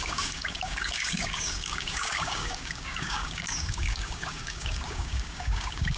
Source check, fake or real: fake